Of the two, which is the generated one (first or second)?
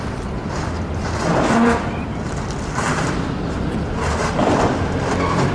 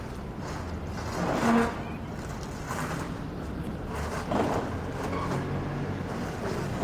first